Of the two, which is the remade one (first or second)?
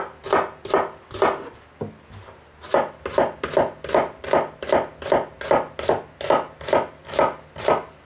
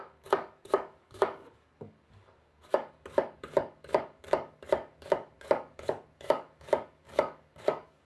second